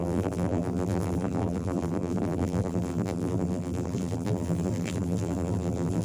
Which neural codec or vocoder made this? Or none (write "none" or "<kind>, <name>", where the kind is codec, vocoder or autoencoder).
vocoder, BigVGAN v2